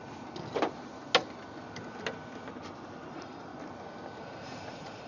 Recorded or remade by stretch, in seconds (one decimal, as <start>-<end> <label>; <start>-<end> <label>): 0.0-3.1 recorded; 3.1-3.5 remade; 3.5-4.2 recorded; 4.2-5.1 remade